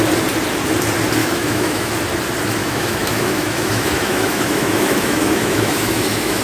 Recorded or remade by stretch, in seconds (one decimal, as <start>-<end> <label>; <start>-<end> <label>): 0.0-1.2 recorded; 1.2-1.9 remade; 1.9-2.6 recorded; 2.6-6.4 remade